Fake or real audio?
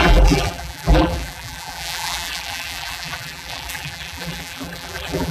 fake